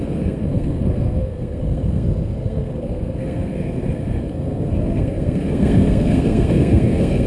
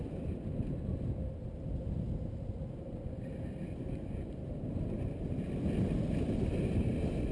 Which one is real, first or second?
second